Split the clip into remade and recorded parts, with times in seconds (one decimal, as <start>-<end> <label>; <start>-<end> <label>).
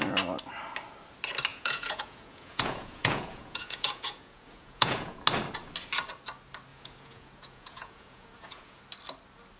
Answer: 0.0-1.5 recorded; 1.5-5.2 remade; 5.2-6.7 recorded; 6.7-8.8 remade; 8.8-9.6 recorded